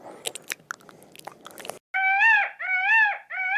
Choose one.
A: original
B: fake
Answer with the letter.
A